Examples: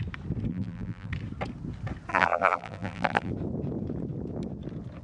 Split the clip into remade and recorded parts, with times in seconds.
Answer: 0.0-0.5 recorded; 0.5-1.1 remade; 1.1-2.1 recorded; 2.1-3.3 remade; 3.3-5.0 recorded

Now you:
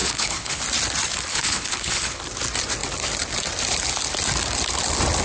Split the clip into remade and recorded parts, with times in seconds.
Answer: 0.0-0.6 remade; 0.6-1.3 recorded; 1.3-2.2 remade; 2.2-5.2 recorded

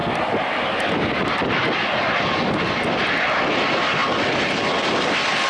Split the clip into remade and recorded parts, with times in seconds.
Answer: 0.0-5.5 recorded

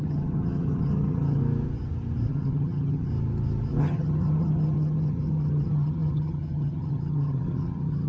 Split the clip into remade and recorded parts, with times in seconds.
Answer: 0.0-1.4 remade; 1.4-2.3 recorded; 2.3-3.1 remade; 3.1-3.8 recorded; 3.8-8.1 remade